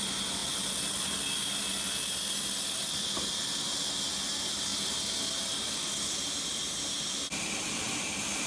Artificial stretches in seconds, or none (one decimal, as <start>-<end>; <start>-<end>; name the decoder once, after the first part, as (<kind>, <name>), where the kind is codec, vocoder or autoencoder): none